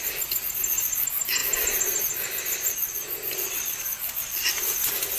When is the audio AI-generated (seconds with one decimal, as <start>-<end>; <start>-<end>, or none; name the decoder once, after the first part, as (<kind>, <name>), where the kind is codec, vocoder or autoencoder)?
none